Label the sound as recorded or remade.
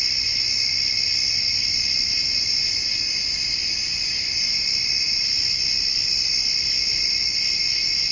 recorded